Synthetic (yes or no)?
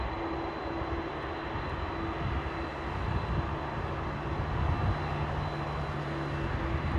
no